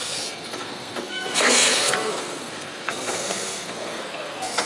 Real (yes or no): no